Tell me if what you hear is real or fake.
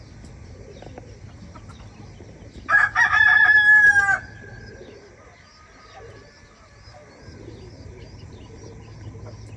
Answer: real